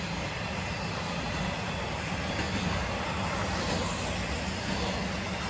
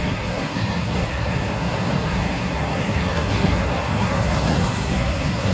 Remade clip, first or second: second